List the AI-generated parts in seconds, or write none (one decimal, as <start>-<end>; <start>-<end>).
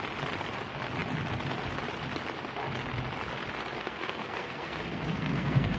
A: 3.8-5.8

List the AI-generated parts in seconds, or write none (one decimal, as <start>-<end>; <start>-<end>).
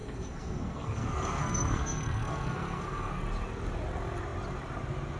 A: 0.0-3.1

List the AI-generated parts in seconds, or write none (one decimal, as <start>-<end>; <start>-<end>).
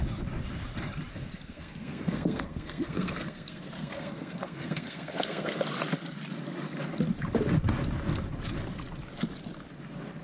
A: 1.1-5.6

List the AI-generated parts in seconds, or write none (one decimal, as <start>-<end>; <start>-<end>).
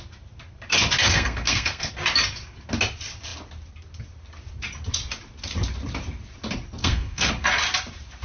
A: 1.0-1.9; 6.8-7.3